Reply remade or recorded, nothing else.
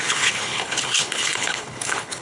remade